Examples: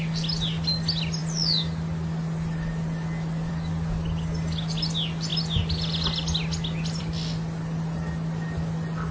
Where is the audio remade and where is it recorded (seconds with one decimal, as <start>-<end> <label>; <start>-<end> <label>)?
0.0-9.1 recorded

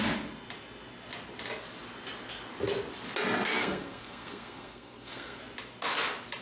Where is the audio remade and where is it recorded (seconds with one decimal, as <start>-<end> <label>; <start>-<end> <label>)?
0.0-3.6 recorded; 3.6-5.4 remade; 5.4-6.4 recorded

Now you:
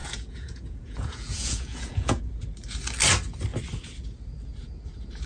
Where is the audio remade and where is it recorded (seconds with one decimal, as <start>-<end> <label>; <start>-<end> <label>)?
0.0-2.2 remade; 2.2-5.3 recorded

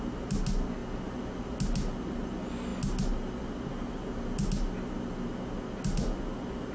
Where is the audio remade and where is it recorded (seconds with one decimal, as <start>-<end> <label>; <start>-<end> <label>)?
0.0-6.7 recorded

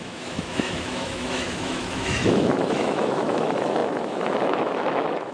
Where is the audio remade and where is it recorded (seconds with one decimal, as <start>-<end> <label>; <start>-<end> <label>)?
0.0-5.3 remade